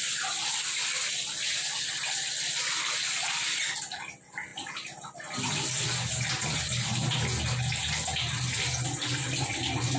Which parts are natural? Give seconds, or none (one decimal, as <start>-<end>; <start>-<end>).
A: 0.0-10.0